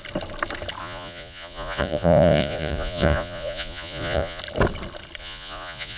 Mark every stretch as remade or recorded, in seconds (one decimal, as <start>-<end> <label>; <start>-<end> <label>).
0.0-0.8 recorded; 0.8-4.4 remade; 4.4-5.2 recorded; 5.2-6.0 remade